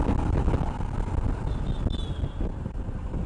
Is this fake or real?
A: real